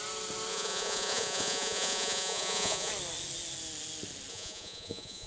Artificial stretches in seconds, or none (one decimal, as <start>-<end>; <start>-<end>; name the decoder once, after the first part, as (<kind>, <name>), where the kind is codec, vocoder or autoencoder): 0.5-2.9 (vocoder, Vocos); 4.3-5.3